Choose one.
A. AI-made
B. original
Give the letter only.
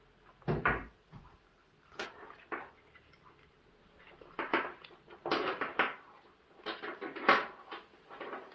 B